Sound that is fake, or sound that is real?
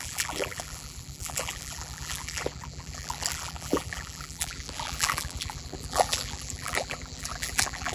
fake